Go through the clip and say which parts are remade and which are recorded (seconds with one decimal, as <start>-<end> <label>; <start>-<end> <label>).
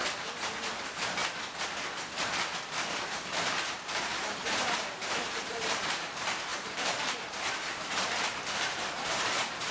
0.0-1.2 remade; 1.2-4.0 recorded; 4.0-8.3 remade; 8.3-8.8 recorded; 8.8-9.7 remade